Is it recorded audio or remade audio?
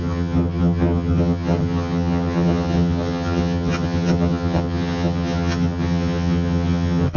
remade